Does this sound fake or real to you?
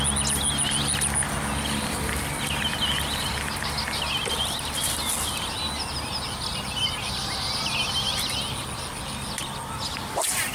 real